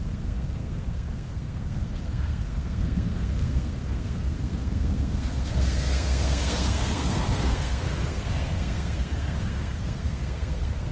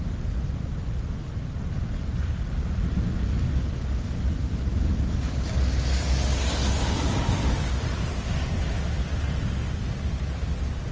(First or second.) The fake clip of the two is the first